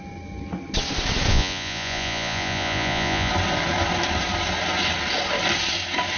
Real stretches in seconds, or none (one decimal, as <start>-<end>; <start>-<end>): 0.0-1.3; 3.3-6.2